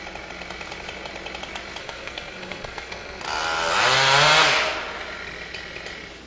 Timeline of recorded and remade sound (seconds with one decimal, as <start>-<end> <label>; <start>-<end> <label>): 0.0-1.8 recorded; 1.8-3.2 remade; 3.2-6.3 recorded